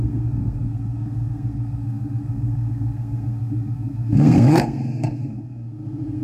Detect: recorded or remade remade